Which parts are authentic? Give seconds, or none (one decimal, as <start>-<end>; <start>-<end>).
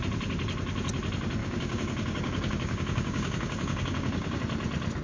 0.0-1.4; 4.4-5.0